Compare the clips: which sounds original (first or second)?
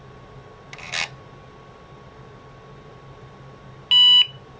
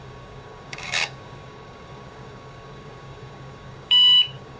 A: first